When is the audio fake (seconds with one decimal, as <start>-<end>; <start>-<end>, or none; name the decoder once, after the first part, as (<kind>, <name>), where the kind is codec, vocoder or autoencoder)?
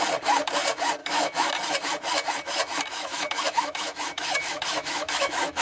1.0-1.5 (autoencoder, DAC-VAE); 2.9-5.6